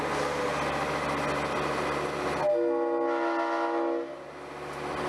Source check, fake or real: real